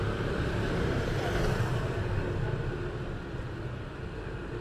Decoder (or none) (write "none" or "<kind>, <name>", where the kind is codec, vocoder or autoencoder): none